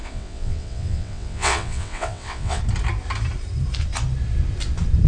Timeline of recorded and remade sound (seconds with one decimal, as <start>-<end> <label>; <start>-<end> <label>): 0.0-2.6 remade; 2.6-5.1 recorded